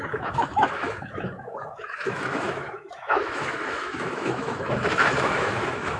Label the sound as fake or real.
fake